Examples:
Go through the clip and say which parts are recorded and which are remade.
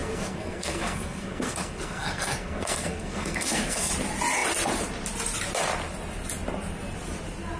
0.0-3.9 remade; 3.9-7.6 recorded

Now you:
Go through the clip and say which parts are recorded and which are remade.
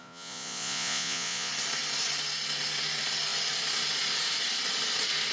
0.0-1.5 remade; 1.5-5.3 recorded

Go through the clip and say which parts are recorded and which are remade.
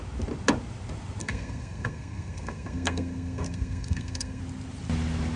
0.0-1.2 recorded; 1.2-4.4 remade; 4.4-5.4 recorded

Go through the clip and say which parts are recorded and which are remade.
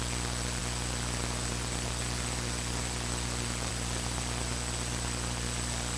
0.0-6.0 recorded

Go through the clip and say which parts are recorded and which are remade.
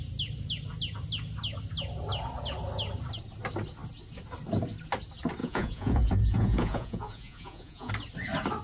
0.0-5.4 recorded; 5.4-7.9 remade; 7.9-8.6 recorded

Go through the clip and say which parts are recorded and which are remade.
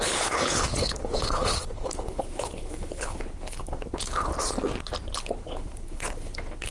0.0-4.3 remade; 4.3-5.2 recorded; 5.2-6.7 remade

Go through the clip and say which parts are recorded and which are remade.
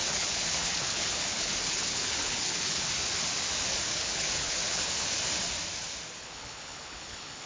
0.0-2.9 remade; 2.9-3.9 recorded; 3.9-4.9 remade; 4.9-6.2 recorded; 6.2-7.5 remade